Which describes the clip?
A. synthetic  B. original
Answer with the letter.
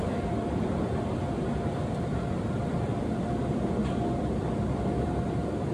A